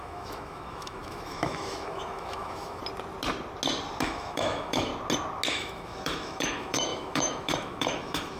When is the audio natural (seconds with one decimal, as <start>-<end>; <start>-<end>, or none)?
2.8-4.0; 4.9-5.5